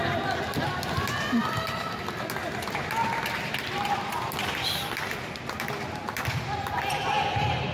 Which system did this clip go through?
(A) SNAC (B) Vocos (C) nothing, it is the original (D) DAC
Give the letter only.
C